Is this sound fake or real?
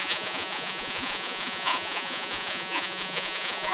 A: fake